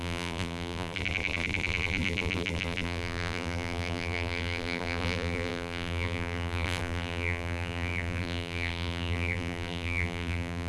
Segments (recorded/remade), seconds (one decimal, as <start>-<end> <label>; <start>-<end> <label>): 0.0-10.7 remade